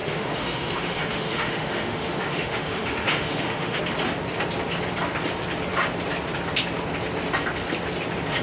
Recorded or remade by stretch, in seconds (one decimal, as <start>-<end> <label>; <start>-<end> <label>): 0.0-3.8 remade; 3.8-8.4 recorded